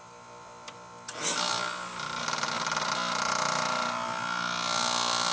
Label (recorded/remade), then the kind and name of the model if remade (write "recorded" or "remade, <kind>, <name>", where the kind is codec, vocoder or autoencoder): recorded